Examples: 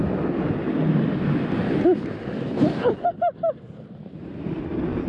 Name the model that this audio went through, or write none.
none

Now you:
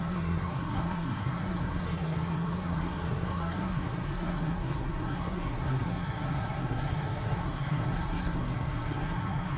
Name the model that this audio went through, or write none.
codec, SNAC